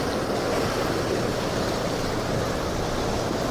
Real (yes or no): yes